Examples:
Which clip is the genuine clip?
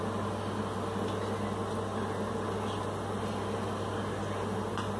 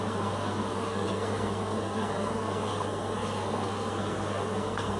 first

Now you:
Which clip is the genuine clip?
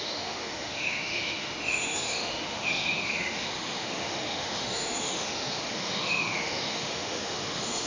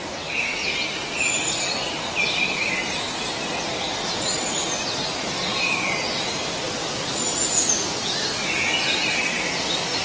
second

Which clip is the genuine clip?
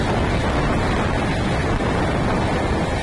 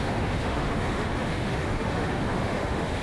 first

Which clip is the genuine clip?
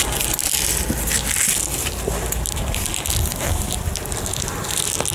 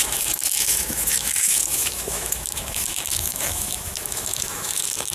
first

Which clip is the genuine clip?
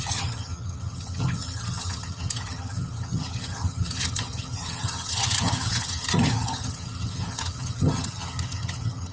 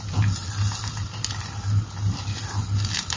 second